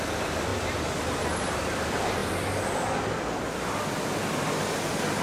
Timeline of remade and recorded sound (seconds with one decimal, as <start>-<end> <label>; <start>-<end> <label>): 0.0-5.2 recorded